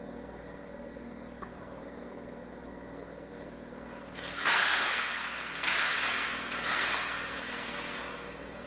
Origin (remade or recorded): remade